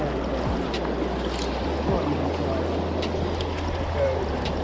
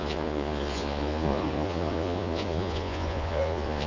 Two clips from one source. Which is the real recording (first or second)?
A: first